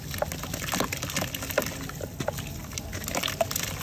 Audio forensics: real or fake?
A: real